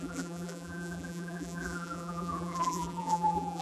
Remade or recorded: remade